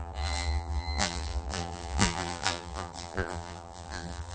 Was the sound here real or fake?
fake